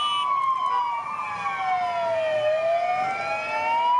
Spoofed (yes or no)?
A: no